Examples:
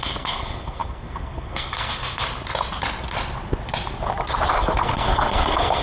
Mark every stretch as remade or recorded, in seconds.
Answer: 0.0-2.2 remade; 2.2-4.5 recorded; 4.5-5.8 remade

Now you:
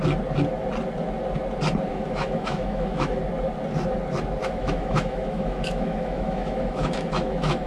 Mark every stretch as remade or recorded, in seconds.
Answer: 0.0-1.9 recorded; 1.9-3.2 remade; 3.2-4.4 recorded; 4.4-7.7 remade

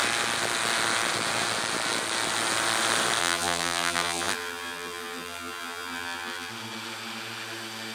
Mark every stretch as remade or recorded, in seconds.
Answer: 0.0-3.2 recorded; 3.2-6.5 remade; 6.5-7.9 recorded

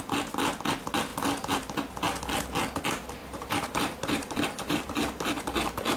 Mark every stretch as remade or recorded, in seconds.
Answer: 0.0-3.2 recorded; 3.2-4.9 remade; 4.9-6.0 recorded